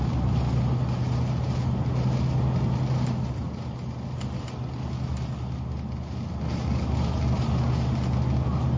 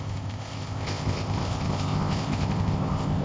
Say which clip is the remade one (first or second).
second